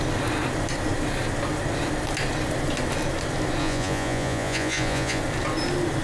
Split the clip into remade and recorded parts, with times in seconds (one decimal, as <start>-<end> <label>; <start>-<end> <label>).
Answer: 0.0-3.6 recorded; 3.6-5.2 remade; 5.2-6.0 recorded